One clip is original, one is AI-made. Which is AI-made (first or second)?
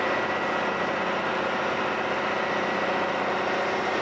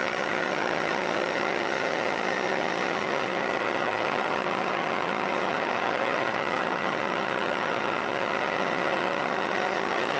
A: second